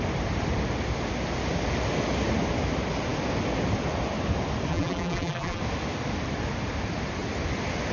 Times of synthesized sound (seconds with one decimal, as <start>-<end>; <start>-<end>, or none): 4.7-5.6